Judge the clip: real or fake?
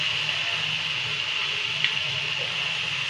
real